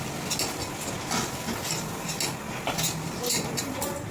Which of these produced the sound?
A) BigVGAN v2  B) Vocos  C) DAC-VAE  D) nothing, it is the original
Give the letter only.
D